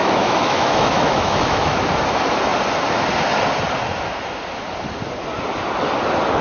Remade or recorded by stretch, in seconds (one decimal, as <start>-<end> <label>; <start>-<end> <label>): 0.0-1.8 remade; 1.8-6.4 recorded